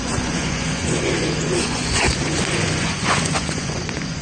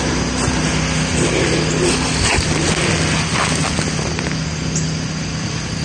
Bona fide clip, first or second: second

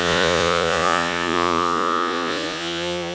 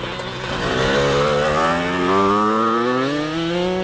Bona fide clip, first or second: second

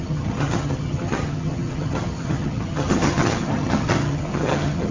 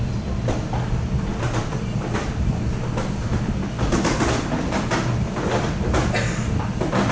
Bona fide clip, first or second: second